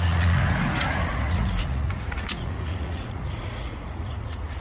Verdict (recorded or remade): remade